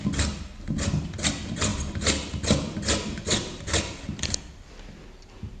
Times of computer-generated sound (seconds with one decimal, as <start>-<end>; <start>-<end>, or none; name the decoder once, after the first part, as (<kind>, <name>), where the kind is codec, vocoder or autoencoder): none